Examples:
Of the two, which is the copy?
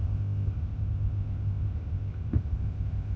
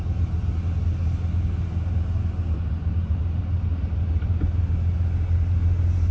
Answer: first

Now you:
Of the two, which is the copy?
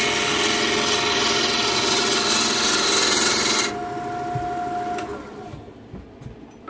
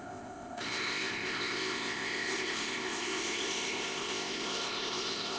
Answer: second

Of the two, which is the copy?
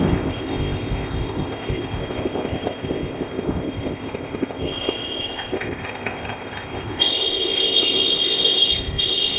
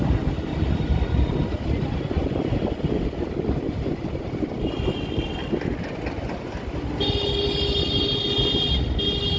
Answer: first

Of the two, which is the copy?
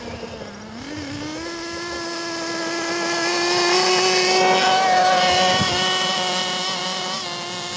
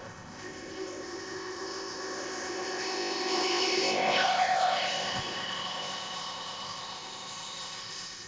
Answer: second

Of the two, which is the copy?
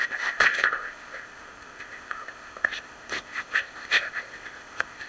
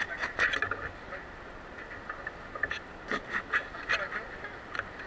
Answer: first